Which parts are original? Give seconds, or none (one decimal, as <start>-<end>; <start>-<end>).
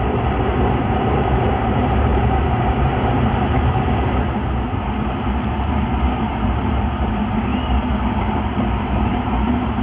7.5-8.2